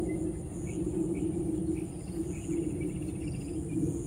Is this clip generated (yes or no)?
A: no